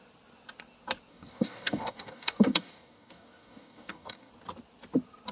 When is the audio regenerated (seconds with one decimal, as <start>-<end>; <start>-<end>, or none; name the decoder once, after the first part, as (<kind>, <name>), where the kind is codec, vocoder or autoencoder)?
1.1-4.3 (codec, DAC)